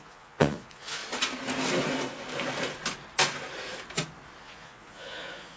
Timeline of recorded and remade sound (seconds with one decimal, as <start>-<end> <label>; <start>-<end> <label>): 0.0-1.0 remade; 1.0-4.4 recorded; 4.4-5.6 remade